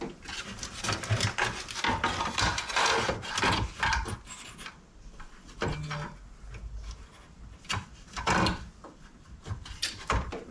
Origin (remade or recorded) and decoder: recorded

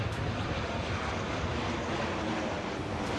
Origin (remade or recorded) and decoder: recorded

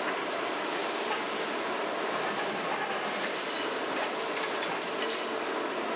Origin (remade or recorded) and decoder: remade, vocoder, BigVGAN v2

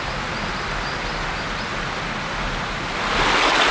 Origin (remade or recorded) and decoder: recorded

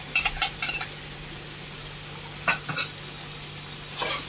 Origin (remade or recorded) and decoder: recorded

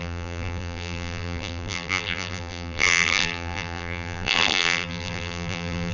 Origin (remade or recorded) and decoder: remade, vocoder, BigVGAN v2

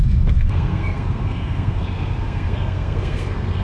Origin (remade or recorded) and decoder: remade, codec, SNAC